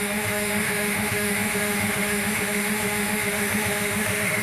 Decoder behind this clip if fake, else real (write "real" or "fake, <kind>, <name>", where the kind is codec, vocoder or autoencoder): fake, autoencoder, DAC-VAE